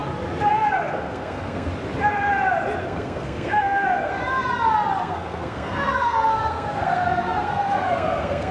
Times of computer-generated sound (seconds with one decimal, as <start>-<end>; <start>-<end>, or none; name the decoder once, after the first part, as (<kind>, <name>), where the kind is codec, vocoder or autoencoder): 0.5-1.7 (codec, SNAC); 2.8-4.2; 5.0-8.5